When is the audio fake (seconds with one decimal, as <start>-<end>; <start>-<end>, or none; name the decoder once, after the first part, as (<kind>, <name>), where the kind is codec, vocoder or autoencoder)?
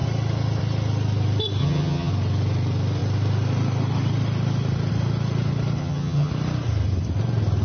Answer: 1.6-2.1 (vocoder, HiFi-GAN); 5.8-6.3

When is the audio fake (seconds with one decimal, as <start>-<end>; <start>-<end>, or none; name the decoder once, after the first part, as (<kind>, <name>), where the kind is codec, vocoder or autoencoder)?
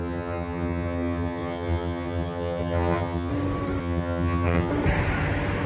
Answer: 0.0-3.3 (vocoder, HiFi-GAN); 3.8-4.7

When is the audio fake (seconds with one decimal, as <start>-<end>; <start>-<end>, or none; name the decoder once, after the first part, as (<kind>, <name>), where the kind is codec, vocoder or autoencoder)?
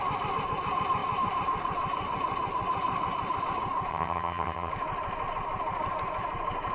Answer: 3.9-4.7 (vocoder, HiFi-GAN)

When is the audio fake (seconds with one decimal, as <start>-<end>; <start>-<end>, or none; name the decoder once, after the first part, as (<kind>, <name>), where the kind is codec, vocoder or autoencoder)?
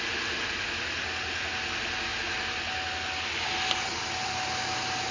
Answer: none